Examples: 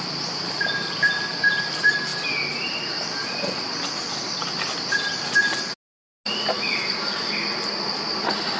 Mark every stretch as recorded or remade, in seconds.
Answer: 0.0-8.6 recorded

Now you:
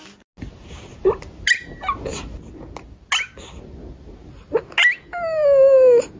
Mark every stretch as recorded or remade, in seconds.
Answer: 0.0-6.2 recorded

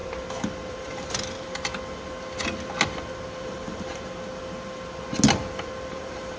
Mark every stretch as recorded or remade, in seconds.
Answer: 0.0-0.7 recorded; 0.7-1.7 remade; 1.7-3.4 recorded; 3.4-4.1 remade; 4.1-5.9 recorded; 5.9-6.4 remade

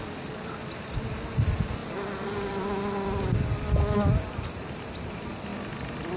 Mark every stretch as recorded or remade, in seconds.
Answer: 0.0-6.2 recorded